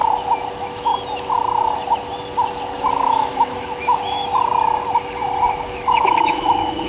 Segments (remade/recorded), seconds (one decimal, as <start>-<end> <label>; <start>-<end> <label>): 0.0-0.5 recorded; 0.5-0.9 remade; 0.9-2.9 recorded; 2.9-4.3 remade; 4.3-5.6 recorded; 5.6-6.9 remade